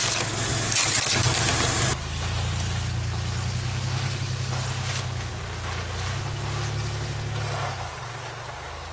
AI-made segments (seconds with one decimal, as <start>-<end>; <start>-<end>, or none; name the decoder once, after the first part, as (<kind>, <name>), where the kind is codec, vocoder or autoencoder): none